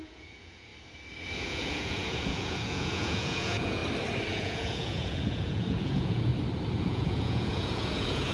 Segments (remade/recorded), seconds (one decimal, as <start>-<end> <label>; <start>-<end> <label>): 0.0-0.7 remade; 0.7-1.3 recorded; 1.3-3.8 remade; 3.8-4.3 recorded; 4.3-6.3 remade; 6.3-6.8 recorded; 6.8-8.3 remade